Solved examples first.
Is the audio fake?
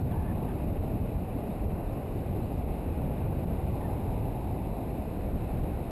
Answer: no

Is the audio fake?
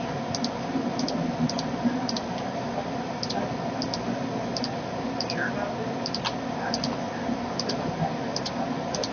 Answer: no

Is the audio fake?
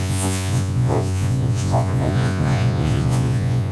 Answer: yes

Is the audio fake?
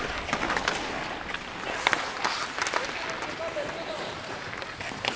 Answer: no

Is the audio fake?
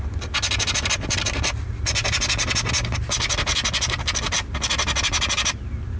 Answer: no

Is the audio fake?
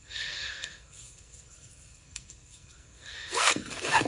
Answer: yes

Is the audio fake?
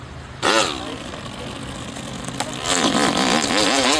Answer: no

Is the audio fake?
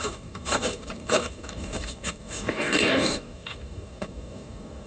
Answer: yes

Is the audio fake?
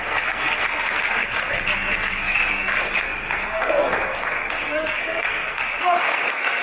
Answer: yes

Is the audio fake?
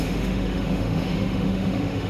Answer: yes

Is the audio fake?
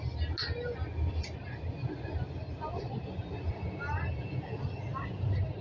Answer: no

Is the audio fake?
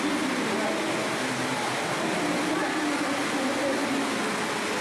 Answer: no